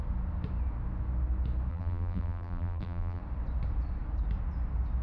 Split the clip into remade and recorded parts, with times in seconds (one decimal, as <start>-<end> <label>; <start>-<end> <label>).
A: 0.0-1.7 recorded; 1.7-3.2 remade; 3.2-5.0 recorded